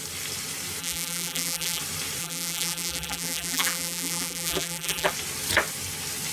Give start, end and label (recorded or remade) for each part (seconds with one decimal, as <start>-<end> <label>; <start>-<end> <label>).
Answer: 0.0-0.8 recorded; 0.8-1.8 remade; 1.8-2.2 recorded; 2.2-5.1 remade; 5.1-6.3 recorded